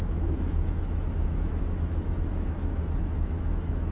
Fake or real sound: fake